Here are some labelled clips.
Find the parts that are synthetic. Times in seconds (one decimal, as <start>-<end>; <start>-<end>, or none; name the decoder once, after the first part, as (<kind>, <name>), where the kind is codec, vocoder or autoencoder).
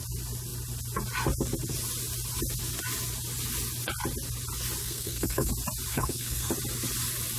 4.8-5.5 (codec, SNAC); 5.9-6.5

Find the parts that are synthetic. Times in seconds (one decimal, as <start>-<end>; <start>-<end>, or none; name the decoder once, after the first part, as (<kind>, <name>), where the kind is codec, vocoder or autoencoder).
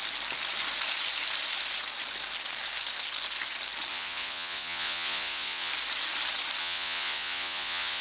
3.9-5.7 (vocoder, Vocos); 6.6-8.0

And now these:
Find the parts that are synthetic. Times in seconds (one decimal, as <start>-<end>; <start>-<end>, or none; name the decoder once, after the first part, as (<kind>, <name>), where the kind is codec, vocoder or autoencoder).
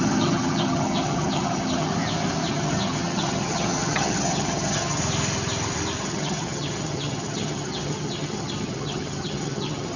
0.0-1.9 (vocoder, HiFi-GAN); 2.5-5.0; 6.0-10.0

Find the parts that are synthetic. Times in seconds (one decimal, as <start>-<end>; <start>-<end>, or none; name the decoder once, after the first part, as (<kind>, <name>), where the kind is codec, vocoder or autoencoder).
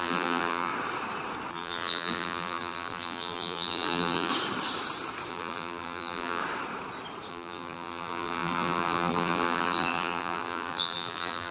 0.0-0.7 (vocoder, BigVGAN v2); 1.5-4.3; 5.3-6.4; 7.3-11.5